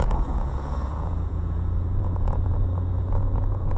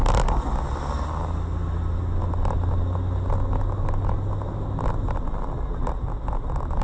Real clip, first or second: second